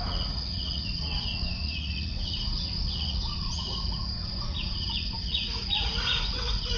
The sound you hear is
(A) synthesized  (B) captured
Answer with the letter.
A